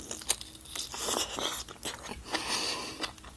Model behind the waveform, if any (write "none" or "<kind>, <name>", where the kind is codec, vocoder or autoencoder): none